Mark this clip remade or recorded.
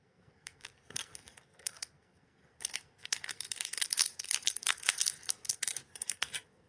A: remade